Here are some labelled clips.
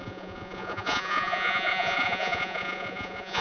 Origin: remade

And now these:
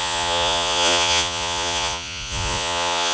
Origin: remade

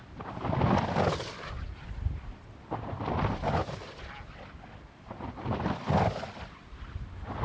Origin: recorded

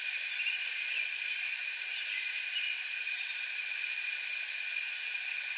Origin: recorded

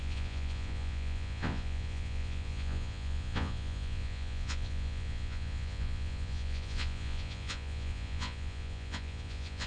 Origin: remade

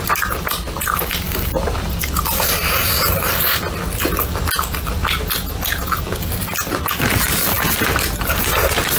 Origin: recorded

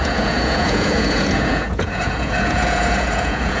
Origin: remade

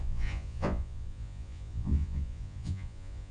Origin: remade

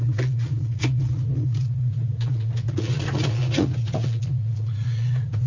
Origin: remade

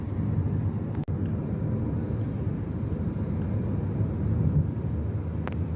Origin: recorded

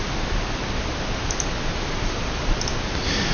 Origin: recorded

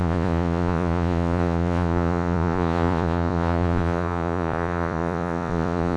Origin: remade